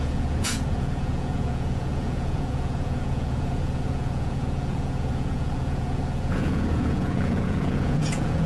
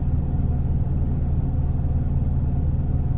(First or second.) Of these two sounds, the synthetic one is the first